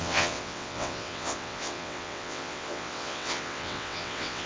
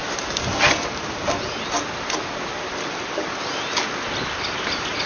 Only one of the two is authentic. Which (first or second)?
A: second